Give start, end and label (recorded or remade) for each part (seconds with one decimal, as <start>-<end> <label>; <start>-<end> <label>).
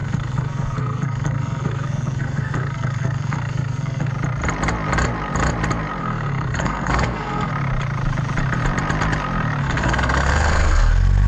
0.0-4.1 remade; 4.1-6.0 recorded; 6.0-7.5 remade; 7.5-9.6 recorded; 9.6-10.9 remade; 10.9-11.3 recorded